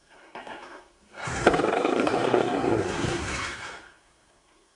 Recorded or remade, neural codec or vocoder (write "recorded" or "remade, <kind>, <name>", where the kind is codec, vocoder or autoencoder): remade, codec, SNAC